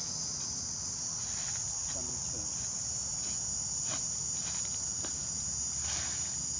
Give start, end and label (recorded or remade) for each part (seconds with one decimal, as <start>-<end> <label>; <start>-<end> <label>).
0.0-6.6 recorded